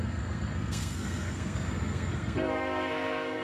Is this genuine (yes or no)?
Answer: no